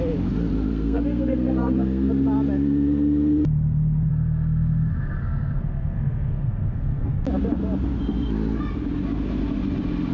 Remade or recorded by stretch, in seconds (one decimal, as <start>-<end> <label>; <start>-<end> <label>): 0.0-0.7 recorded; 0.7-2.1 remade; 2.1-4.1 recorded; 4.1-7.1 remade; 7.1-10.1 recorded